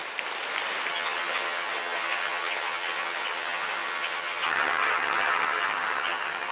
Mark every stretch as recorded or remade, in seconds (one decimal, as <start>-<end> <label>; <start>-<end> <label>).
0.0-0.9 recorded; 0.9-6.5 remade